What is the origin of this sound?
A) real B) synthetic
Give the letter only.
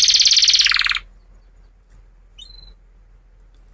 A